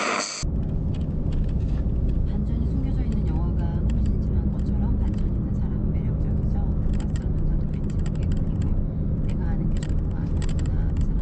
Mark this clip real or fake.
real